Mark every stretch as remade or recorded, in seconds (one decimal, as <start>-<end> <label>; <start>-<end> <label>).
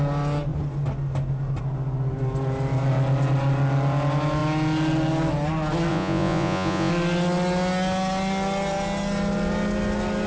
0.0-5.9 recorded; 5.9-6.9 remade; 6.9-10.3 recorded